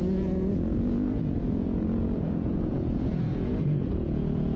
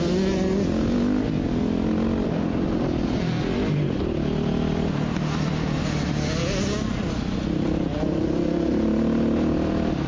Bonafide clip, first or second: second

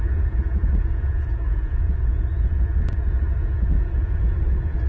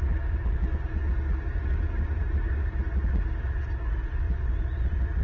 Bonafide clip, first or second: second